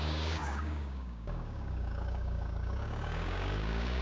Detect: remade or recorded remade